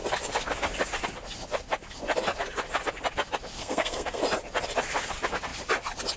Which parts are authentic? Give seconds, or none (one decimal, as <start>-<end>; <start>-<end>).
0.0-3.6; 4.2-6.2